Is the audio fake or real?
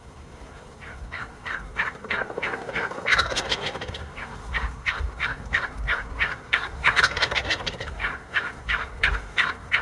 fake